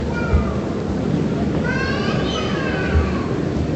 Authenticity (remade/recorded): recorded